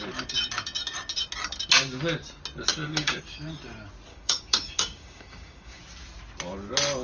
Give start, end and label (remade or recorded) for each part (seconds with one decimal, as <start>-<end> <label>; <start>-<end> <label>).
0.0-2.7 recorded; 2.7-3.2 remade; 3.2-4.1 recorded; 4.1-5.8 remade; 5.8-7.0 recorded